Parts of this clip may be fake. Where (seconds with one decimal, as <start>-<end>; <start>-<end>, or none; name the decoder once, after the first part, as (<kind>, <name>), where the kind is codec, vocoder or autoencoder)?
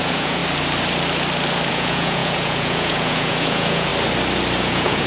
0.0-0.4 (vocoder, Vocos); 1.7-3.9; 4.6-5.1